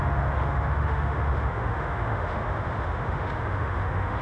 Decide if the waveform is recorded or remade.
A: remade